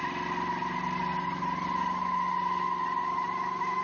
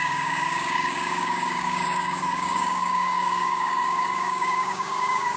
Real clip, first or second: first